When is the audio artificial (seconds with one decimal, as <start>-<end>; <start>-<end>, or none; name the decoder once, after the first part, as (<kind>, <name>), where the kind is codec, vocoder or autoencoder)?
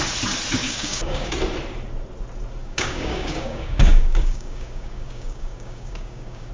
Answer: 0.6-1.3 (codec, DAC); 2.6-6.5